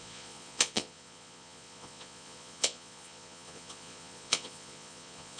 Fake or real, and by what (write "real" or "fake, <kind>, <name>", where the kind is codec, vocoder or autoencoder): fake, vocoder, Vocos